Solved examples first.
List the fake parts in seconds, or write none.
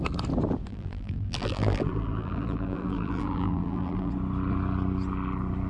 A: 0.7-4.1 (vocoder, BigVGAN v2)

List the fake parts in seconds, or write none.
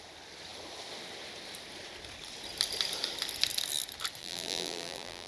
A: 4.2-5.3 (vocoder, BigVGAN v2)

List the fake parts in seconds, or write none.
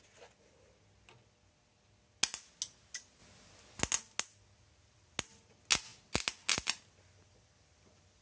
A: none